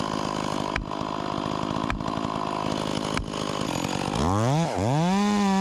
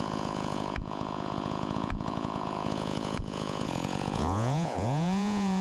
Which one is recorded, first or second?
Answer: first